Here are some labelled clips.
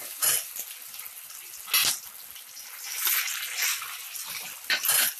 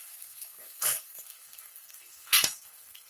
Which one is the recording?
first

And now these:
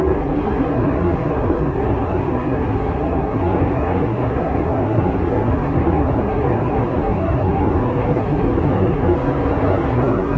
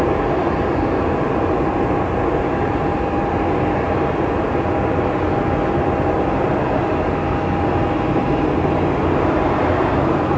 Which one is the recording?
second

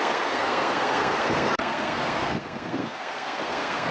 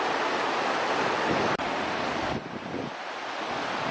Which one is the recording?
second